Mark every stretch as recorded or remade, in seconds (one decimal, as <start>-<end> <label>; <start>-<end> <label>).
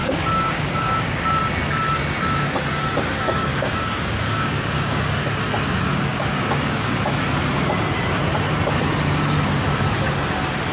0.0-1.4 remade; 1.4-3.5 recorded; 3.5-5.2 remade; 5.2-6.1 recorded; 6.1-7.0 remade; 7.0-10.7 recorded